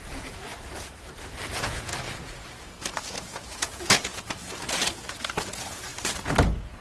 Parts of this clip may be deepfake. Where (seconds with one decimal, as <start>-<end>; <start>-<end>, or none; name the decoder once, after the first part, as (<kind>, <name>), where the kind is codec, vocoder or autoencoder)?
0.0-0.5 (vocoder, Vocos); 1.5-1.9; 3.0-5.9